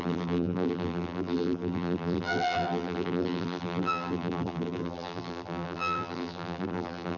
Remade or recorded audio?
remade